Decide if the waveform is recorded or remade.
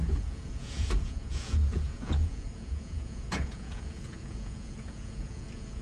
remade